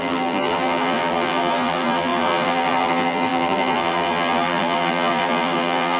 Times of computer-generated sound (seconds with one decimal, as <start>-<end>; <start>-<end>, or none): 0.0-6.0